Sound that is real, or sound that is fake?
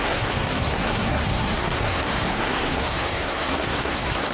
fake